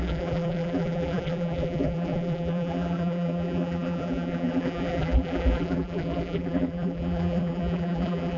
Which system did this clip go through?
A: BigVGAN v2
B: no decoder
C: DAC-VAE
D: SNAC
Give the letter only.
A